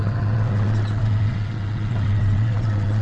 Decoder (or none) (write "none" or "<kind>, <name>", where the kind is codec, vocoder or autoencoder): vocoder, WaveNeXt